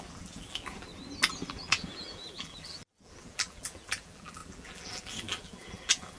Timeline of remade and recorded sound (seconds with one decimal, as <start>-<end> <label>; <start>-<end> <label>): 0.0-0.9 remade; 0.9-1.5 recorded; 1.5-6.2 remade